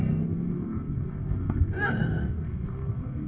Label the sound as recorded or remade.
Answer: remade